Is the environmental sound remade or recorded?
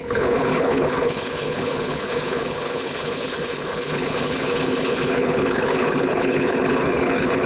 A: remade